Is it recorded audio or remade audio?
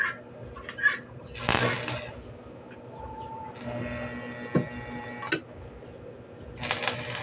recorded